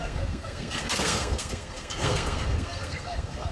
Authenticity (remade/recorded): remade